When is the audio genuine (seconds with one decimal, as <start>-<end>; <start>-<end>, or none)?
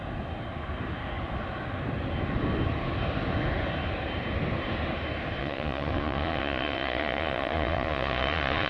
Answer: 0.0-5.4